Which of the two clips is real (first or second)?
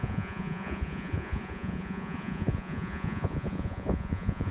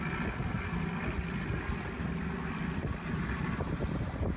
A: second